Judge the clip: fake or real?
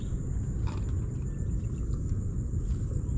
real